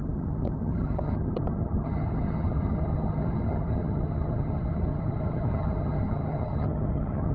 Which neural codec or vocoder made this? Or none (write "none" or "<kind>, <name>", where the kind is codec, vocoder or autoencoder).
vocoder, HiFi-GAN